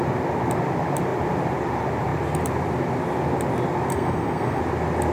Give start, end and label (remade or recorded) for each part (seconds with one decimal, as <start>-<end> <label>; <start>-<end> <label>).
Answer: 0.0-3.9 recorded; 3.9-4.6 remade; 4.6-5.1 recorded

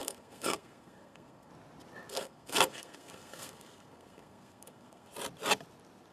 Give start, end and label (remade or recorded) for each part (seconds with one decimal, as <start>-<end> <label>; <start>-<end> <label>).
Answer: 0.0-1.5 remade; 1.5-2.1 recorded; 2.1-5.1 remade; 5.1-6.1 recorded